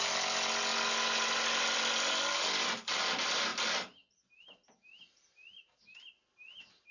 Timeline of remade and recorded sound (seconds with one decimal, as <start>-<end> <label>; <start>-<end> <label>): 0.0-6.9 recorded